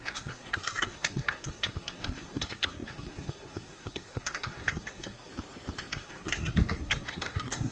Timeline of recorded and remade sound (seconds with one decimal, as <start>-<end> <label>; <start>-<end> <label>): 0.0-5.3 remade; 5.3-5.9 recorded; 5.9-7.7 remade